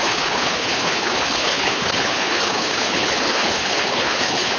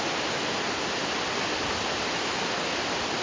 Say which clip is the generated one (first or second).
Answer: first